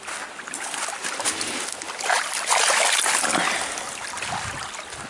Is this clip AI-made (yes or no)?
no